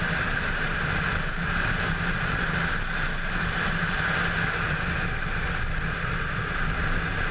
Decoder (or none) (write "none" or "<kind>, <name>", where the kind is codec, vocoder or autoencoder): none